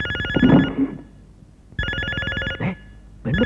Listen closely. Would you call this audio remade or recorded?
recorded